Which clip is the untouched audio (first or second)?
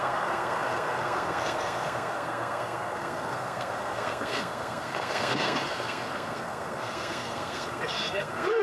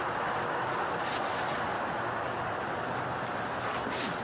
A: second